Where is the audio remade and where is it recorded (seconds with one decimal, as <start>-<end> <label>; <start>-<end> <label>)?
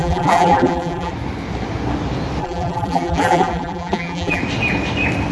0.0-1.1 remade; 1.1-2.4 recorded; 2.4-4.4 remade; 4.4-5.3 recorded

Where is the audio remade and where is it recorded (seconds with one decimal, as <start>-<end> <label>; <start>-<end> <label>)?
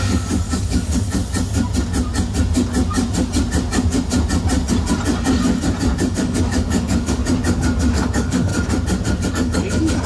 0.0-1.2 remade; 1.2-6.0 recorded; 6.0-7.2 remade; 7.2-7.9 recorded; 7.9-8.5 remade; 8.5-9.3 recorded; 9.3-10.1 remade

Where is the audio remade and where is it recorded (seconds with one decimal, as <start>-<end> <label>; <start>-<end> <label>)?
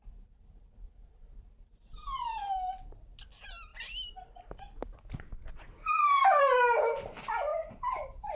0.0-8.3 recorded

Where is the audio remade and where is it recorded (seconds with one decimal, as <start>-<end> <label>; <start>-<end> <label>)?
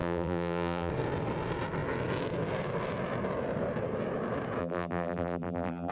0.0-0.9 remade; 0.9-4.6 recorded; 4.6-5.9 remade